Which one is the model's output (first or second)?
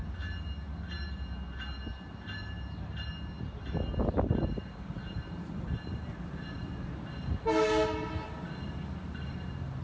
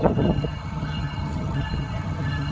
second